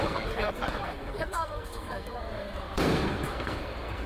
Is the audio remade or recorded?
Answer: remade